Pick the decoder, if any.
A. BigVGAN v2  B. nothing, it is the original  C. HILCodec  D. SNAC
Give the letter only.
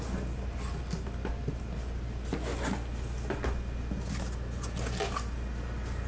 B